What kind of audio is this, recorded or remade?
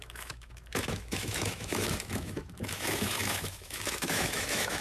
remade